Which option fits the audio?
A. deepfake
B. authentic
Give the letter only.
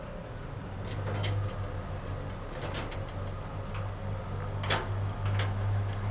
B